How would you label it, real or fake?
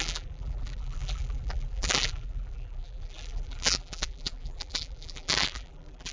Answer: fake